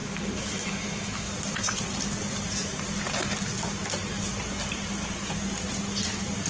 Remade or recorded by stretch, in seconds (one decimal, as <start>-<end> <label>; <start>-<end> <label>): 0.0-1.3 remade; 1.3-6.5 recorded

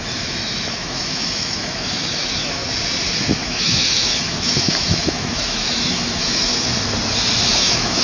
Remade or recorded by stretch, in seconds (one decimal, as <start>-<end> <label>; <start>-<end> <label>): 0.0-2.6 remade; 2.6-3.2 recorded; 3.2-6.5 remade; 6.5-7.5 recorded; 7.5-8.0 remade

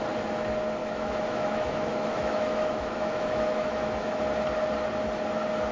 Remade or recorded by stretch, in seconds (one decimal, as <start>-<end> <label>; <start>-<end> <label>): 0.0-0.8 recorded; 0.8-4.2 remade; 4.2-5.7 recorded

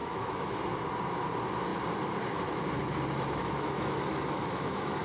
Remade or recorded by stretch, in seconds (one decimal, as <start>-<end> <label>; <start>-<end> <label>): 0.0-0.6 remade; 0.6-3.4 recorded; 3.4-5.0 remade

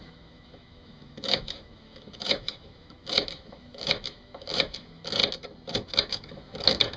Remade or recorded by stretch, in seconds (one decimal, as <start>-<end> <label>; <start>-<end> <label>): 0.0-5.2 remade; 5.2-5.7 recorded; 5.7-7.0 remade